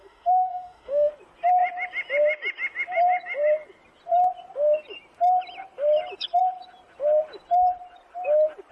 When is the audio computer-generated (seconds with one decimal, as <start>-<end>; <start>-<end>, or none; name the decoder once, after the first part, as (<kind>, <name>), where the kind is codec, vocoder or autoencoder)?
0.0-1.1 (autoencoder, DAC-VAE)